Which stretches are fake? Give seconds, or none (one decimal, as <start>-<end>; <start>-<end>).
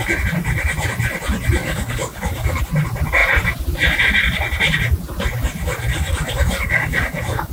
1.6-2.6; 5.9-7.5